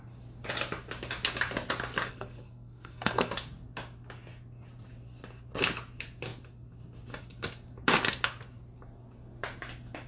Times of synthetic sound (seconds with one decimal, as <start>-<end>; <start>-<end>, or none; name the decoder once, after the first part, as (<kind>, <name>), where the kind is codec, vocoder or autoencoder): 2.1-3.3 (codec, SNAC)